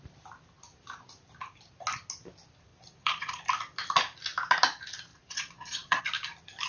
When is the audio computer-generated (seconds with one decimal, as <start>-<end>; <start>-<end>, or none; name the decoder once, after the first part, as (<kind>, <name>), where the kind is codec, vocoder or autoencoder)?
2.7-3.4 (vocoder, Vocos); 5.1-6.0